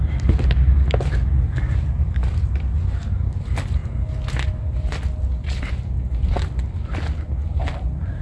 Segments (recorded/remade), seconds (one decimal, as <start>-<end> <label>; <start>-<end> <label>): 0.0-8.2 recorded